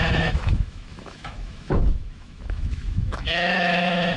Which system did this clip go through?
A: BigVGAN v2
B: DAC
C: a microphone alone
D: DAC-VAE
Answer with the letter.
D